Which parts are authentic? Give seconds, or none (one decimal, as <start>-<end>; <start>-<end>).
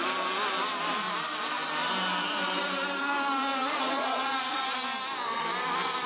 0.0-3.6; 4.6-6.1